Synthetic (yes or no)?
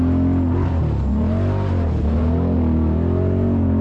no